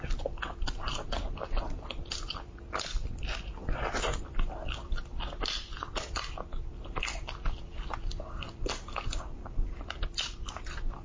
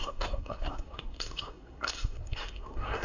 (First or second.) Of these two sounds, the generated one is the second